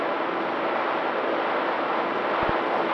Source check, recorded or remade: recorded